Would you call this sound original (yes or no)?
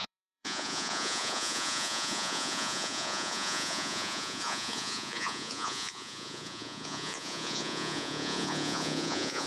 no